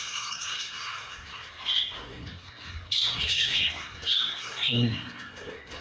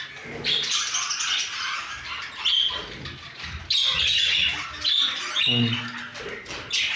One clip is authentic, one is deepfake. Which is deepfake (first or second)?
first